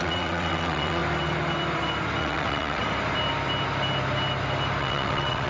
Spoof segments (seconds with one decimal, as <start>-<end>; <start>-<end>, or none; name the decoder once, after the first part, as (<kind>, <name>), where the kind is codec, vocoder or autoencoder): 0.0-1.0 (vocoder, WaveNeXt); 2.2-2.8; 4.8-5.5